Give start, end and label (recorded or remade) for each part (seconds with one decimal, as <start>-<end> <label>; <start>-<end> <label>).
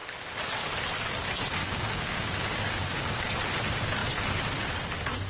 0.0-1.6 recorded; 1.6-3.3 remade; 3.3-5.3 recorded